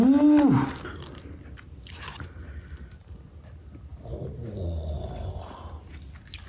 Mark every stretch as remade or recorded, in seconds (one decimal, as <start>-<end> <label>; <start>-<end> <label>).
0.0-6.5 recorded